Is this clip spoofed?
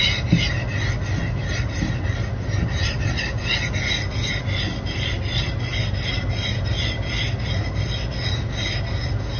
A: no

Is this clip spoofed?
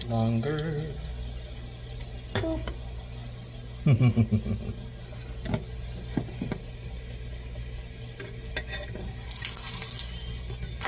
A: no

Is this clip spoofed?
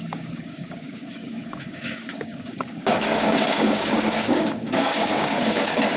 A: yes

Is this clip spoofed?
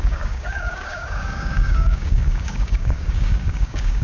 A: yes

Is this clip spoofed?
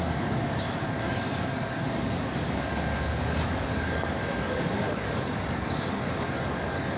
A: yes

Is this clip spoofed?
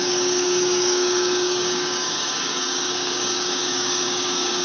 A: yes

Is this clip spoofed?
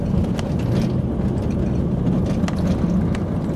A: no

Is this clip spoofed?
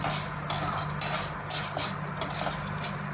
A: no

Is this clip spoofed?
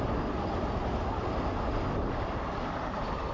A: no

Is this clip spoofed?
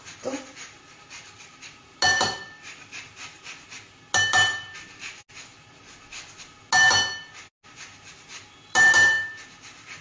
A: no